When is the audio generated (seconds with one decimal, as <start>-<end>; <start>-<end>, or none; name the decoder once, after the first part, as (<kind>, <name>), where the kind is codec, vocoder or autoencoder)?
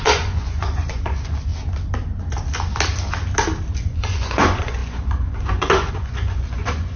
0.0-1.5 (vocoder, Vocos); 3.8-7.0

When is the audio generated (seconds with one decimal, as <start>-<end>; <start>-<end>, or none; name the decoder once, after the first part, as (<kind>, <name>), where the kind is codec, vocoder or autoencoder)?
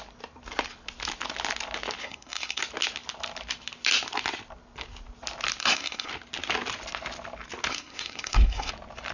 2.0-2.6 (codec, SNAC); 5.6-6.1; 7.7-8.7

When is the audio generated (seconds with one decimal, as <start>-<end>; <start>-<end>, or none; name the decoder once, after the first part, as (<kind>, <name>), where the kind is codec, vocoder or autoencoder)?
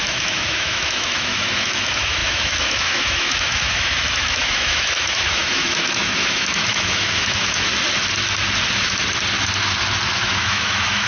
0.0-7.7 (autoencoder, DAC-VAE); 10.1-11.1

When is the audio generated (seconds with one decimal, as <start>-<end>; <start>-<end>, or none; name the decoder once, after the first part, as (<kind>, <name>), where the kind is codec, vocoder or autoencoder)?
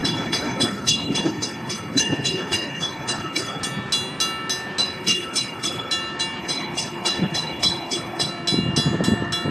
0.0-3.6 (codec, HILCodec); 4.8-5.9; 6.4-8.3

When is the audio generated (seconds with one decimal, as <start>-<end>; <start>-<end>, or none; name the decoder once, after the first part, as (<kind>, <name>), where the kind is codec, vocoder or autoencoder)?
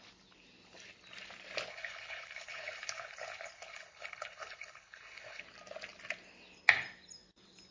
1.7-5.4 (codec, HILCodec)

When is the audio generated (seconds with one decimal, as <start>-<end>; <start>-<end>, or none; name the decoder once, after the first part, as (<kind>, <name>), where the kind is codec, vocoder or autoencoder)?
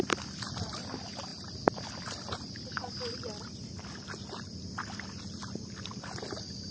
none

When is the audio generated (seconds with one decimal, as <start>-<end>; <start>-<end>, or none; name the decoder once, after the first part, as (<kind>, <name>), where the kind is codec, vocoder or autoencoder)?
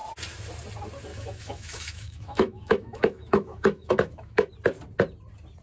1.1-4.5 (autoencoder, DAC-VAE)